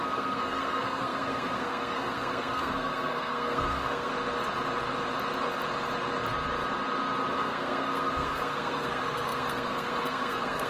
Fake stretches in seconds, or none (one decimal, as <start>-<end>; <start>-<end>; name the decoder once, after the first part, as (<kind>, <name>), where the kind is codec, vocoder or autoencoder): 0.0-4.1 (codec, SNAC); 7.3-10.7